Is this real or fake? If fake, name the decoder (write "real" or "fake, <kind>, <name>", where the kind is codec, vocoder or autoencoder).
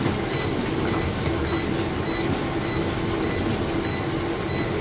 real